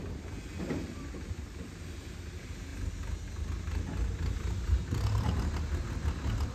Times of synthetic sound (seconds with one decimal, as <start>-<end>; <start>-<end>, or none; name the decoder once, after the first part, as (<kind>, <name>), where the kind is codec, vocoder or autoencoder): none